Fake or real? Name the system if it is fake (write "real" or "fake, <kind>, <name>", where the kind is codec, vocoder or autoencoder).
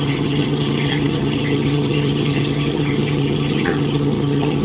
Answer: fake, vocoder, HiFi-GAN